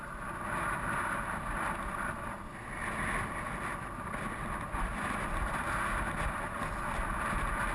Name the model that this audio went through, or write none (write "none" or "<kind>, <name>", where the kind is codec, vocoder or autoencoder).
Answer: none